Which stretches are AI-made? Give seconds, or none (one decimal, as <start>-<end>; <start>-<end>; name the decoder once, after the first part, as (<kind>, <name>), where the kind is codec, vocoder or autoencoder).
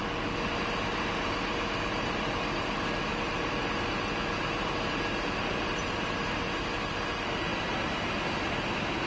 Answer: none